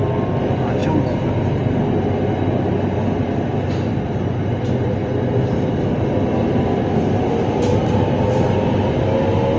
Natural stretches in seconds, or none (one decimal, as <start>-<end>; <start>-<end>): 0.0-9.6